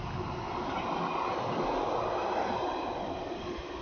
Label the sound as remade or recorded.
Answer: recorded